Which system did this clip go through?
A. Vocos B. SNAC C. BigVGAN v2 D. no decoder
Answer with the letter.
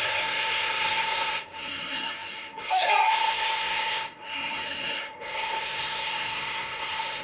B